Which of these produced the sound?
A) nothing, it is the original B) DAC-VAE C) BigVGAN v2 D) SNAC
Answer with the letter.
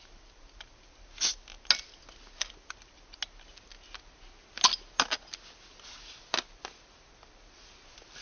A